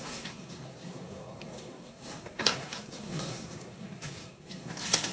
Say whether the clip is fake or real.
fake